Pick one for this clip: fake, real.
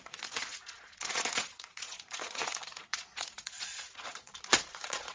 fake